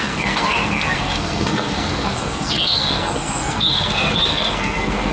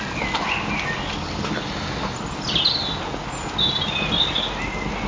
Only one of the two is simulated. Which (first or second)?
first